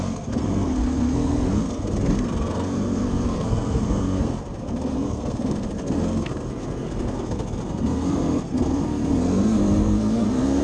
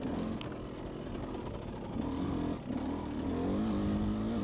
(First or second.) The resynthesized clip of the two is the first